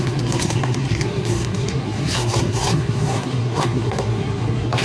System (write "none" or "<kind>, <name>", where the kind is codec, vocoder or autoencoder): codec, SNAC